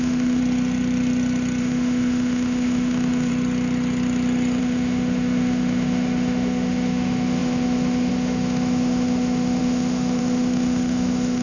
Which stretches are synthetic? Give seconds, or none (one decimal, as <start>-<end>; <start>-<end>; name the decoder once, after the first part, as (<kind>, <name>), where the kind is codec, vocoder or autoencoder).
0.0-0.4 (autoencoder, DAC-VAE); 1.6-3.3; 4.6-11.4